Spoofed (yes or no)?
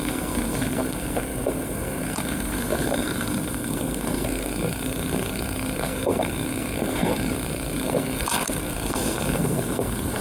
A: yes